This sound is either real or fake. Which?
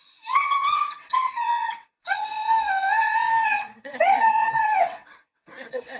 fake